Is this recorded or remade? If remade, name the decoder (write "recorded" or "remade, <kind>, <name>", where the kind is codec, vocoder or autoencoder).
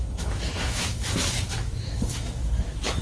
remade, autoencoder, DAC-VAE